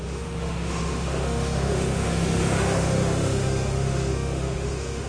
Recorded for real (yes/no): no